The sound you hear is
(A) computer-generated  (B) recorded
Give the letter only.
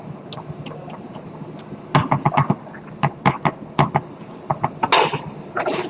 B